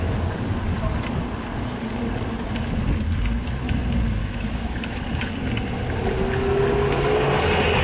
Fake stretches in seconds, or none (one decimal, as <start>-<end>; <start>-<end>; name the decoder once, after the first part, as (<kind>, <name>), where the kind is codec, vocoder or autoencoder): 4.2-5.3 (autoencoder, DAC-VAE)